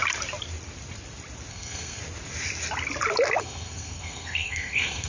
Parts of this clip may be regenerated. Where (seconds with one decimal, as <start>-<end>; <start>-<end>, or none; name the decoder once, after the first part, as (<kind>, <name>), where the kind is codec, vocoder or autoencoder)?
1.5-2.0 (codec, SNAC); 3.4-5.1